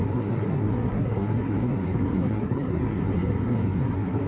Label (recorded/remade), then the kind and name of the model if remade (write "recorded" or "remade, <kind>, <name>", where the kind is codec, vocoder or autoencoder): remade, codec, SNAC